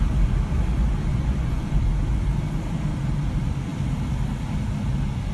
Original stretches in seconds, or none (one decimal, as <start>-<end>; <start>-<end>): 0.0-1.1; 1.8-5.3

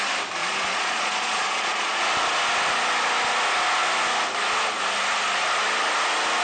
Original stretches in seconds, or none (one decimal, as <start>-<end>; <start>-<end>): 0.0-0.4; 2.0-6.4

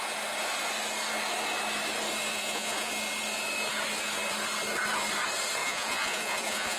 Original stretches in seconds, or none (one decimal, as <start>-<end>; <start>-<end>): 0.0-2.3; 2.9-5.6